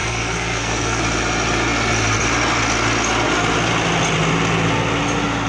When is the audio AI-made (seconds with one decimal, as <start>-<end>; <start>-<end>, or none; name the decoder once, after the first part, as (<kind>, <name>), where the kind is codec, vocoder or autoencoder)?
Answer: 0.0-1.0 (codec, SNAC)